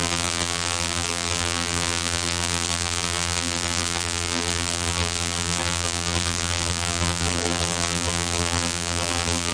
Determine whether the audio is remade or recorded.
remade